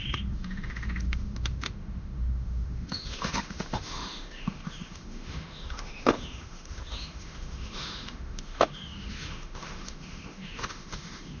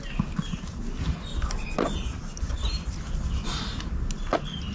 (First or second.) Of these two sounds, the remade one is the first